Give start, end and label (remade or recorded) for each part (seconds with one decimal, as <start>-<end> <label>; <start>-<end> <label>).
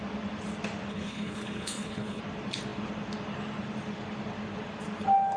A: 0.0-0.9 recorded; 0.9-2.2 remade; 2.2-5.4 recorded